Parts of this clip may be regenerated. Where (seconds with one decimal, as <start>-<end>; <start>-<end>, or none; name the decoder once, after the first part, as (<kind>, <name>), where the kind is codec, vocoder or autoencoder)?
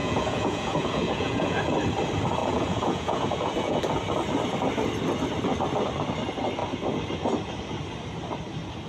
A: 0.0-1.6 (vocoder, Vocos); 2.4-3.8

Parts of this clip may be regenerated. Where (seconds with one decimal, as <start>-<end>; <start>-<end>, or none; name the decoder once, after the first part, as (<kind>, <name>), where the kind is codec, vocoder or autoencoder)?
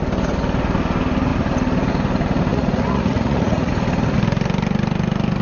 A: 2.5-3.7 (vocoder, Vocos)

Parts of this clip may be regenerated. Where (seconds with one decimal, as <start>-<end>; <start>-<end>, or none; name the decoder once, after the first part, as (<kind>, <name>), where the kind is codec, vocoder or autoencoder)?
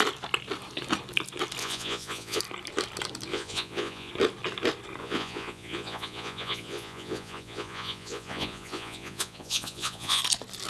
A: 1.6-2.4 (vocoder, Vocos); 3.3-4.1; 5.0-10.2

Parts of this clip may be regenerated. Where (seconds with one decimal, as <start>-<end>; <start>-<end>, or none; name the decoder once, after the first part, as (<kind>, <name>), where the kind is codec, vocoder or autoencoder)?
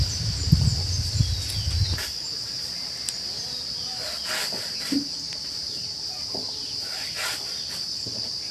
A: none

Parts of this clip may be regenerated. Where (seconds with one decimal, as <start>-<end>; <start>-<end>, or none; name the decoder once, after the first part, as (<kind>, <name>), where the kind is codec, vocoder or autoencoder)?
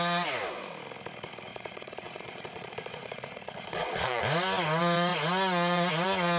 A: 1.5-4.2 (vocoder, Vocos)